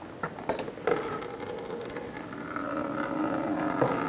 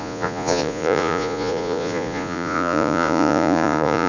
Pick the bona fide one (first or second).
first